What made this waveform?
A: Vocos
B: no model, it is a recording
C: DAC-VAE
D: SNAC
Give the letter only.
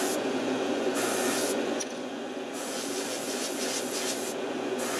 A